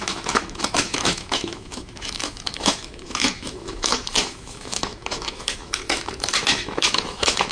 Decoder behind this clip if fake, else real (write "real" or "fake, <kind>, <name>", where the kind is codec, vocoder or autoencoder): fake, autoencoder, DAC-VAE